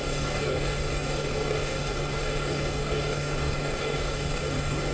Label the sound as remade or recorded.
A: remade